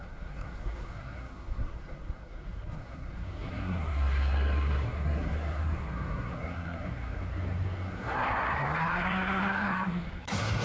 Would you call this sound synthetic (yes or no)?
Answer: yes